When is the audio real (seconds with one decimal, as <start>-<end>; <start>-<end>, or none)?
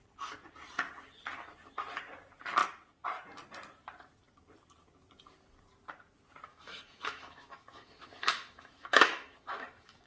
0.0-6.5